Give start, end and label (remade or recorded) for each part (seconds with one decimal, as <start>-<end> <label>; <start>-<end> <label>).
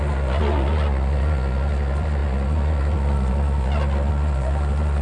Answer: 0.0-5.0 remade